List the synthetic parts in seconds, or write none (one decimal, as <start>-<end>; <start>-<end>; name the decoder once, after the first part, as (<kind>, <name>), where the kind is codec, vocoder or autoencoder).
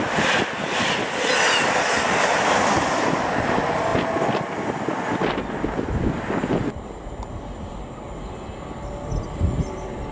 none